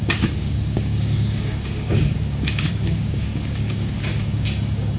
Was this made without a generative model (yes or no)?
no